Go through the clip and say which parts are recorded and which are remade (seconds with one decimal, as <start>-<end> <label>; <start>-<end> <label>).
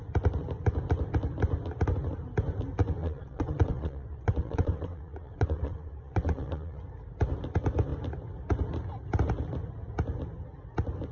0.0-3.0 recorded; 3.0-6.8 remade; 6.8-11.1 recorded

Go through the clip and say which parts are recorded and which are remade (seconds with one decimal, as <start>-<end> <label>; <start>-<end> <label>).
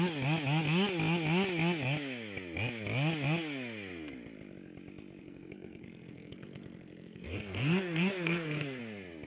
0.0-5.2 recorded; 5.2-8.8 remade; 8.8-9.3 recorded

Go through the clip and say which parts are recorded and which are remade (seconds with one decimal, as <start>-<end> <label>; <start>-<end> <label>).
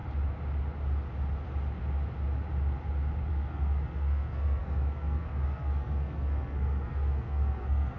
0.0-3.3 recorded; 3.3-8.0 remade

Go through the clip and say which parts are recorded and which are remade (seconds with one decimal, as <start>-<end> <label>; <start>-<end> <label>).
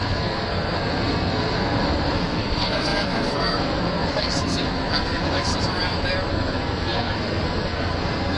0.0-5.5 remade; 5.5-6.3 recorded; 6.3-8.4 remade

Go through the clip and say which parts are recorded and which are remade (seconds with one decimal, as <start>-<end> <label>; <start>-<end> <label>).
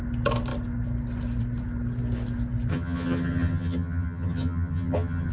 0.0-2.7 recorded; 2.7-5.3 remade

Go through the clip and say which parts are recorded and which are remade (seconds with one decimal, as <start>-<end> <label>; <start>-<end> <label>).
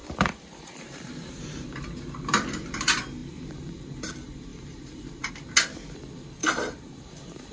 0.0-1.6 remade; 1.6-4.5 recorded; 4.5-5.3 remade; 5.3-6.4 recorded; 6.4-7.5 remade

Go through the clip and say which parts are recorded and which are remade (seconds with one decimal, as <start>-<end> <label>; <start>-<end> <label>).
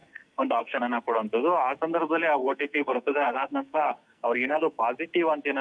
0.0-0.8 remade; 0.8-2.4 recorded; 2.4-4.8 remade; 4.8-5.6 recorded